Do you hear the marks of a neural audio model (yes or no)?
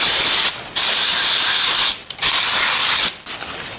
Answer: yes